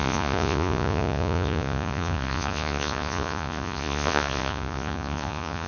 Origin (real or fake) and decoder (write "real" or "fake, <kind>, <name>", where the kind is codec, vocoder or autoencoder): fake, vocoder, Vocos